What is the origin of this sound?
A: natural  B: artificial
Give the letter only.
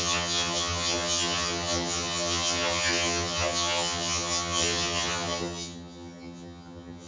B